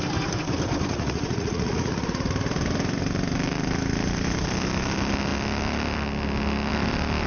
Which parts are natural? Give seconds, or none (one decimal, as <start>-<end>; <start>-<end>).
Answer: 0.0-0.9; 2.3-7.3